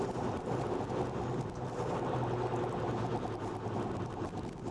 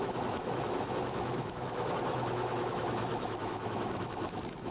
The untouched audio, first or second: first